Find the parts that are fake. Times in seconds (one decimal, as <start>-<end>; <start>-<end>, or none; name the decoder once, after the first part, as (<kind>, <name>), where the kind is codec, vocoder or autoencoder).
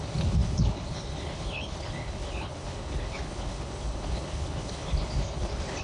0.0-5.8 (codec, HILCodec)